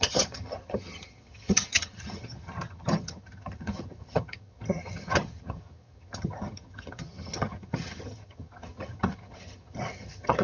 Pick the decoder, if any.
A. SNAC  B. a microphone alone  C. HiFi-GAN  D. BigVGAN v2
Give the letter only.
C